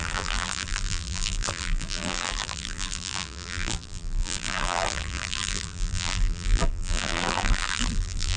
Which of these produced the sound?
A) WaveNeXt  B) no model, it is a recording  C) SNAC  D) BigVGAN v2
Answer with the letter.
D